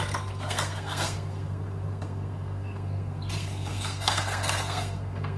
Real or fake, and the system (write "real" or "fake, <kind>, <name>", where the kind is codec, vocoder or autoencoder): fake, codec, SNAC